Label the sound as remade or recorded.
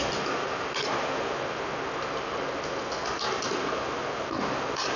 recorded